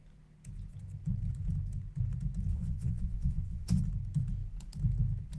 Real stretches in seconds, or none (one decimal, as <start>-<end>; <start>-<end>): 0.0-2.5; 3.8-5.4

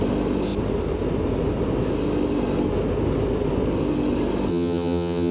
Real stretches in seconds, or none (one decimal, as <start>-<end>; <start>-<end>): 0.0-4.5

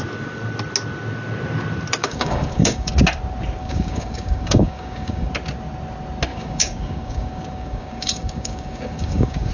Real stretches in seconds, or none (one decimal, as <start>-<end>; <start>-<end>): 0.0-2.0; 2.9-3.6; 5.3-6.3

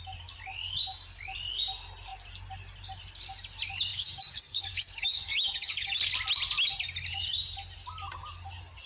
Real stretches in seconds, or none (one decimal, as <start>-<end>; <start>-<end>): 0.0-3.9; 6.0-8.9